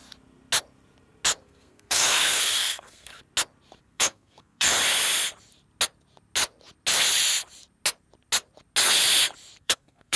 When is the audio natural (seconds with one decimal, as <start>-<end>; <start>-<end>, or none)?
0.0-1.4; 3.1-3.8; 4.7-9.6